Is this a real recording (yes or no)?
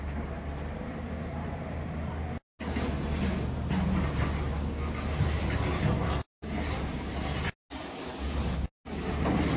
yes